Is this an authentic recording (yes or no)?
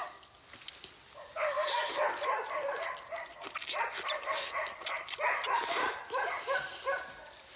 yes